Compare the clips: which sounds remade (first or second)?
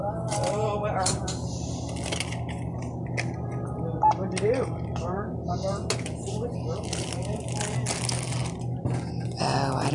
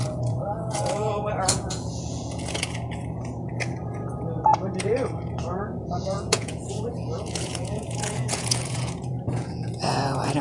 second